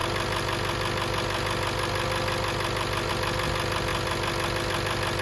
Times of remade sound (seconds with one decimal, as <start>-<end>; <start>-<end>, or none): none